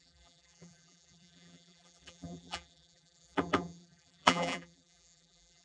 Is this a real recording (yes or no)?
no